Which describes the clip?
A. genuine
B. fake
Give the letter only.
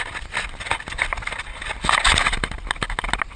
A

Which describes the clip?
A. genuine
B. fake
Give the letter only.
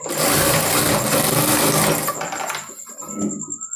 A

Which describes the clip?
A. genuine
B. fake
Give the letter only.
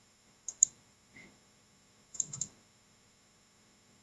B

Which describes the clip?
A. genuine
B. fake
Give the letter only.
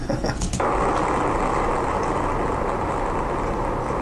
A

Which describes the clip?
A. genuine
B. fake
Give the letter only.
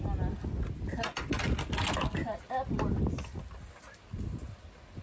A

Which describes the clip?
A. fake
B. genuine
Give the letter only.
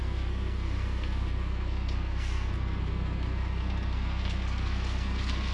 A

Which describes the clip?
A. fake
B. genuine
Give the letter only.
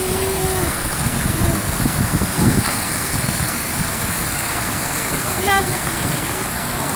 A